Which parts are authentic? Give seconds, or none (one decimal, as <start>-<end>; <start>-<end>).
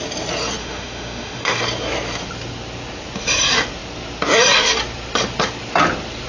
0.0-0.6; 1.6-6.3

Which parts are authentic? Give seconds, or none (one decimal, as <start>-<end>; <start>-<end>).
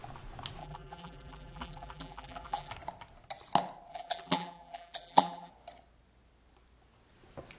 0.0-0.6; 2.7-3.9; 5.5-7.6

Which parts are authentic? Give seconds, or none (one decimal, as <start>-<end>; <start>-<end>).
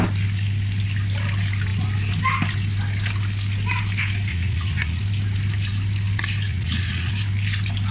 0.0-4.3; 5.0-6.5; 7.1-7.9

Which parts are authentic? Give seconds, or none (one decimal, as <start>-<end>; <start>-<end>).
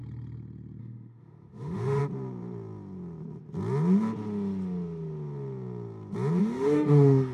0.0-0.8; 2.0-6.4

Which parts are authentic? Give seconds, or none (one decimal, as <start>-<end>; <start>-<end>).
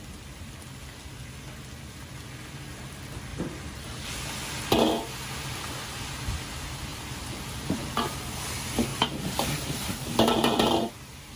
0.0-3.3; 4.1-6.9; 8.4-8.9; 10.9-11.4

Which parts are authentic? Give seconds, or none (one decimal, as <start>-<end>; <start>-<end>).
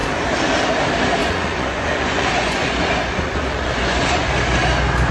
0.0-1.2; 4.3-5.1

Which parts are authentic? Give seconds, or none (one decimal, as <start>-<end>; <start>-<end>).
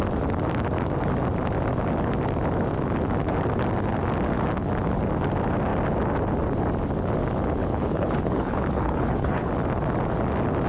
0.0-7.6; 9.5-10.7